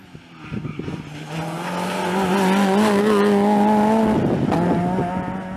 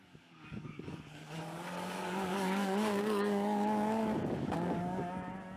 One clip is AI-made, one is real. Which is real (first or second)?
first